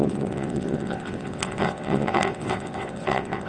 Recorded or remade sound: remade